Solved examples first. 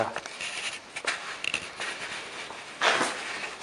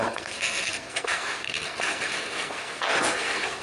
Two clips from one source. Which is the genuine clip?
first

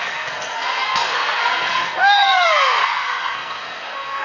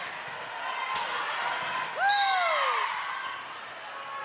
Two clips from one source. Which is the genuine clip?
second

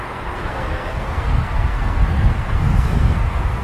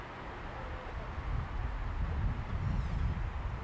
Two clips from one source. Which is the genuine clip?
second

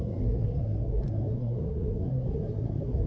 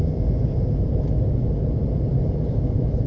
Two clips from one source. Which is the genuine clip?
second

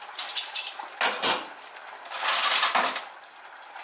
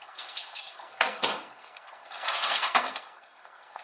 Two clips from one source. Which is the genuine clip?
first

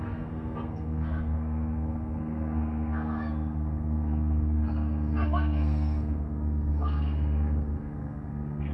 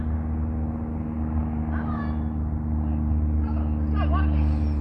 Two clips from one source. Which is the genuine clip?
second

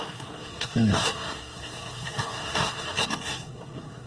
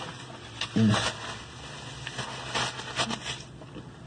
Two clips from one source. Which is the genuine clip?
second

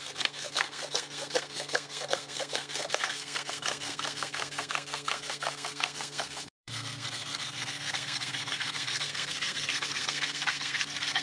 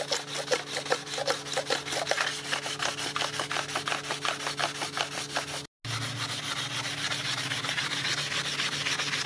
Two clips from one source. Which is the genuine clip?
second